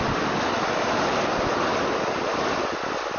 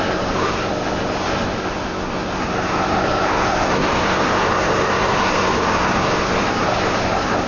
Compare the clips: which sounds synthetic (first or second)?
second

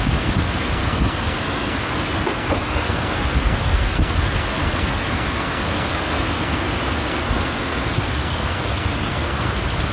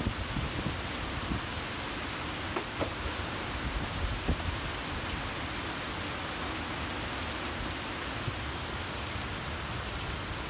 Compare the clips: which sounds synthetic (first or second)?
first